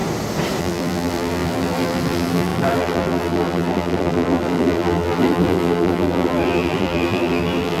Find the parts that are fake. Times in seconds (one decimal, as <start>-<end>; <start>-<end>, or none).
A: 0.6-7.8

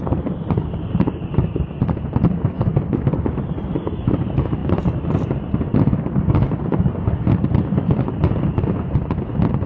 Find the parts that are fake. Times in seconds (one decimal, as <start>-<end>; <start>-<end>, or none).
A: none

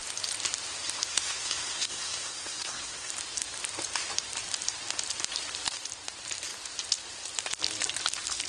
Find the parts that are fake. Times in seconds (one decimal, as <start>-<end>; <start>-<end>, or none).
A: 1.1-3.1

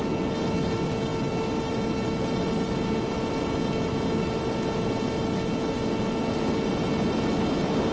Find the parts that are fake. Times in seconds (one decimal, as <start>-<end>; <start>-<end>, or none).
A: none

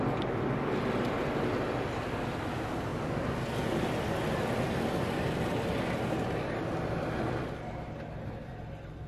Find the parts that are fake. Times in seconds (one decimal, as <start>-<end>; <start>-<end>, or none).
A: none

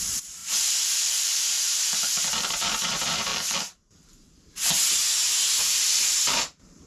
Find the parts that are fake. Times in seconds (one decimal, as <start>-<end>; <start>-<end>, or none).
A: 0.0-3.3; 5.6-6.9

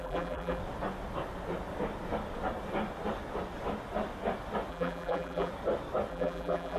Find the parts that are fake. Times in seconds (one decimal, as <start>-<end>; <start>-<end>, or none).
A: 0.0-0.6; 4.7-5.5; 6.1-6.8